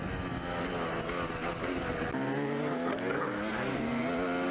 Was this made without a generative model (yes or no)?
yes